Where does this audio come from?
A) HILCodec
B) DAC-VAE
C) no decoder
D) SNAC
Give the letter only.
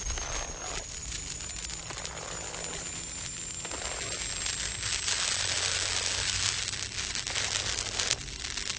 C